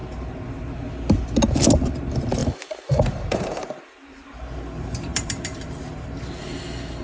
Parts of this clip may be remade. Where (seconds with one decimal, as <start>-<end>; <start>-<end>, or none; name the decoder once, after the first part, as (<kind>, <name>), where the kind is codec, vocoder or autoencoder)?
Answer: 2.4-3.8 (vocoder, BigVGAN v2); 5.1-6.3